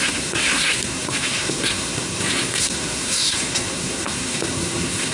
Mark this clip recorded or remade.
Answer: remade